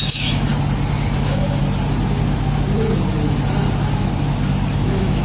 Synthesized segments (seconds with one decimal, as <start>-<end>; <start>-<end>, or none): 0.0-0.5; 1.2-1.6; 4.7-5.2